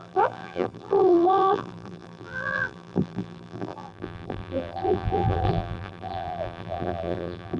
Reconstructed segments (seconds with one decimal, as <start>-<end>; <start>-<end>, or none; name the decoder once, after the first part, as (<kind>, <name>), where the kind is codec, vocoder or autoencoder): 0.0-7.6 (vocoder, BigVGAN v2)